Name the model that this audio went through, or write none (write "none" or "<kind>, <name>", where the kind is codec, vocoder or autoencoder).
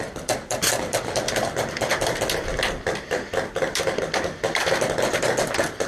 none